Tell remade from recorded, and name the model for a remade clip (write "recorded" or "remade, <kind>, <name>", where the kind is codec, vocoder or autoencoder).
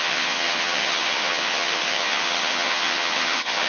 remade, vocoder, HiFi-GAN